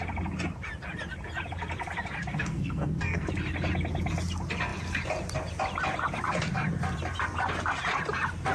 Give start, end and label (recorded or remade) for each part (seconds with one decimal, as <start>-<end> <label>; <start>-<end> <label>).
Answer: 0.0-2.3 recorded; 2.3-3.3 remade; 3.3-8.5 recorded